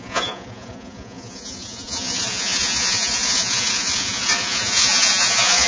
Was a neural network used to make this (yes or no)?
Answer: yes